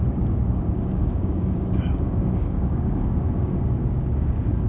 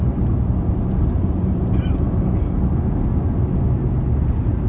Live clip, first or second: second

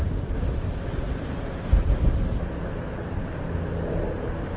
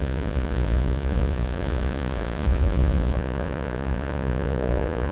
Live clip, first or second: first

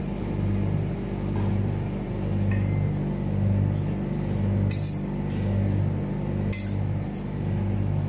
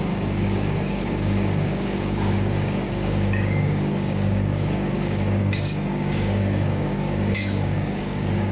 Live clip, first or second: first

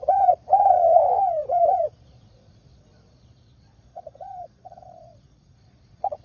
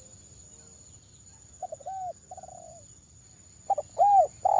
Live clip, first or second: second